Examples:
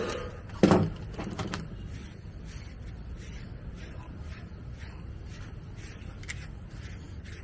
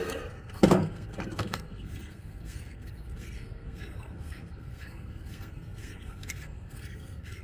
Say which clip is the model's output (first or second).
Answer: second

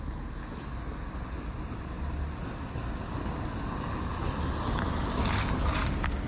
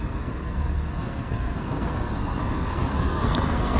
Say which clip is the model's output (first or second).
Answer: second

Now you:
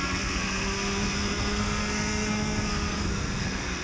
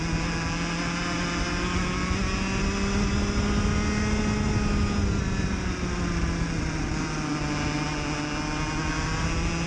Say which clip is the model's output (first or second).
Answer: first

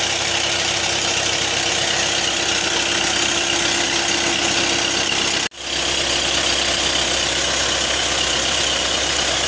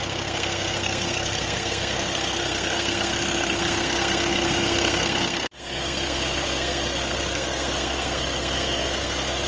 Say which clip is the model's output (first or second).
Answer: second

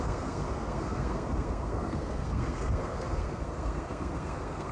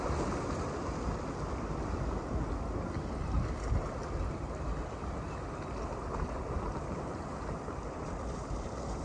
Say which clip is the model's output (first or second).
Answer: first